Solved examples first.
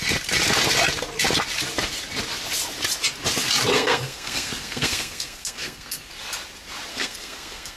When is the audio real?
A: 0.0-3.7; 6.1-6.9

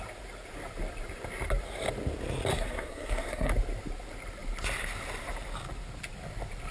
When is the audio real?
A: 0.0-2.5; 3.5-6.7